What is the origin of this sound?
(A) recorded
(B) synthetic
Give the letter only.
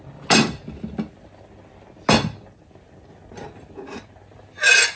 A